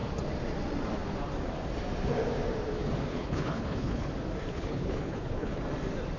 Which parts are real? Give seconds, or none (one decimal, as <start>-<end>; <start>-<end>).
0.0-3.1; 4.1-4.5; 5.6-6.2